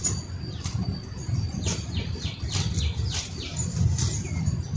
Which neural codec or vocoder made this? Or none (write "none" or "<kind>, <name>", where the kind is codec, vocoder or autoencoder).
none